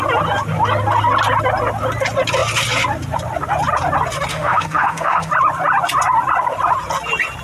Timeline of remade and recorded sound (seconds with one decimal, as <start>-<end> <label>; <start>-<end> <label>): 0.0-4.3 recorded; 4.3-5.3 remade; 5.3-7.4 recorded